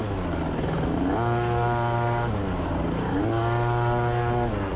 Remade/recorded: recorded